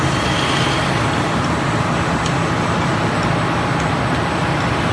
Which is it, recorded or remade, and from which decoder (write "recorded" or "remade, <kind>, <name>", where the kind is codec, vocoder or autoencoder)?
recorded